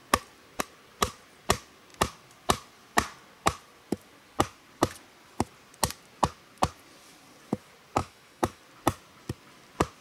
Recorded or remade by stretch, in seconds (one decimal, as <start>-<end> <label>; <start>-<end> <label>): 0.0-8.0 recorded; 8.0-8.6 remade; 8.6-10.0 recorded